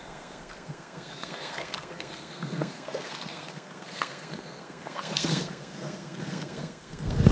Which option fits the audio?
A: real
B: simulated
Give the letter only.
B